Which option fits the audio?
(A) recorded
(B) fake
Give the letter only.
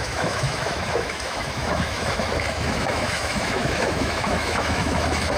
B